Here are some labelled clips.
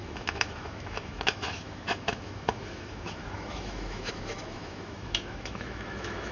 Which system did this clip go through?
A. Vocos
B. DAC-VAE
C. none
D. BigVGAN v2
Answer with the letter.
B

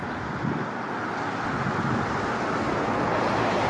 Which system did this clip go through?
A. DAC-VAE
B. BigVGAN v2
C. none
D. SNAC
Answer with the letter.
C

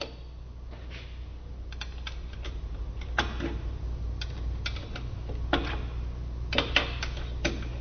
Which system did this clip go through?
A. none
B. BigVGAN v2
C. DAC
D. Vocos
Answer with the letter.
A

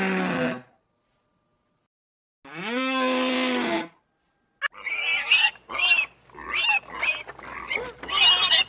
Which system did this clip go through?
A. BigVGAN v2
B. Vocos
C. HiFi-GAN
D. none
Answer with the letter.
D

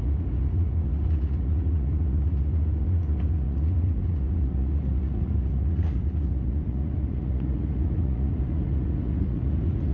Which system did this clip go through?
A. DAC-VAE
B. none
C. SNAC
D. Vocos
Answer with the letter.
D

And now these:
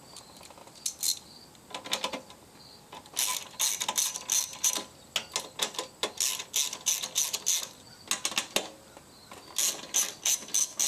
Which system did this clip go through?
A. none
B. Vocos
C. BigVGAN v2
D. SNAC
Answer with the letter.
A